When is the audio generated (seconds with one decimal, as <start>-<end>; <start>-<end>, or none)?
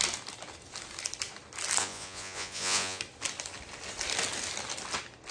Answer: 1.8-3.0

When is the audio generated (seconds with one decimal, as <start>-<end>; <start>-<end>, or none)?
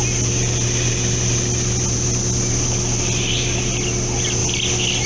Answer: none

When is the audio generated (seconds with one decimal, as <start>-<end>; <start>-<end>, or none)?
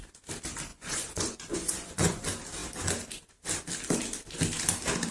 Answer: 0.7-2.2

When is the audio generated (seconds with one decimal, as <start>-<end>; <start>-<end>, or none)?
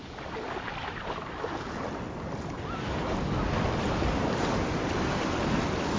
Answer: none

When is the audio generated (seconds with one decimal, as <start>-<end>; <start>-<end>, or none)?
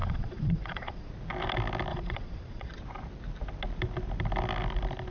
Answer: 0.0-1.1; 1.9-2.8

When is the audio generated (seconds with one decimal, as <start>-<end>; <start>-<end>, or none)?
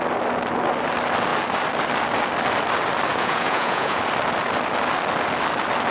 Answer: 3.1-4.0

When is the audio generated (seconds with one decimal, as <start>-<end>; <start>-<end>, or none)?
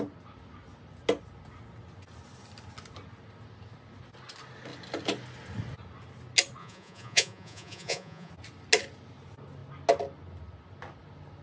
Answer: 6.6-8.3